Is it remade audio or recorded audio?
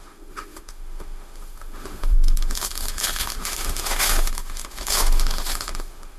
remade